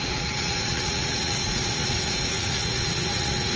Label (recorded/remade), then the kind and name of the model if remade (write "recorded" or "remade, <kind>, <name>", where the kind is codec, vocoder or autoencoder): remade, vocoder, Vocos